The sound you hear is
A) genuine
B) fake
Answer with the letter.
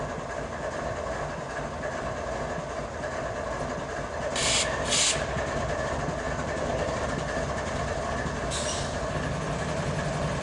A